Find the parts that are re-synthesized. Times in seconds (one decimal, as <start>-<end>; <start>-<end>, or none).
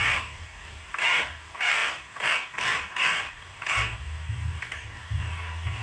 0.0-5.8